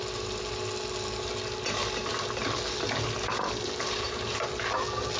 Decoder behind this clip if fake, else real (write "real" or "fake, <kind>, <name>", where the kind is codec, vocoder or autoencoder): real